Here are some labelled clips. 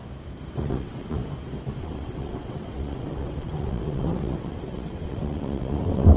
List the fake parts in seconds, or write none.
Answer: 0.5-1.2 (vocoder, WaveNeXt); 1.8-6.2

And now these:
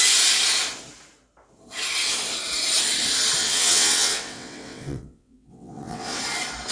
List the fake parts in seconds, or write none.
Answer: 3.4-6.2 (vocoder, WaveNeXt)